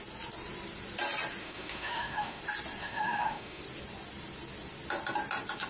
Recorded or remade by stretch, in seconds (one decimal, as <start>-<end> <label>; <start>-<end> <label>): 0.0-1.4 recorded; 1.4-2.4 remade; 2.4-2.8 recorded; 2.8-3.6 remade; 3.6-5.7 recorded